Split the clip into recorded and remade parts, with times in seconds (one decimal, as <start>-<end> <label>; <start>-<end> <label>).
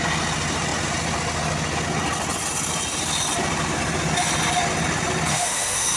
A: 0.0-5.3 recorded; 5.3-6.0 remade